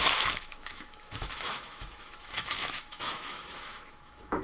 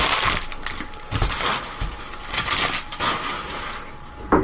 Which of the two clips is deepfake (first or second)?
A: first